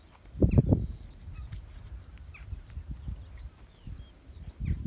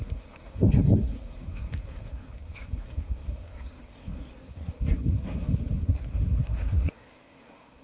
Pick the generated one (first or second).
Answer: second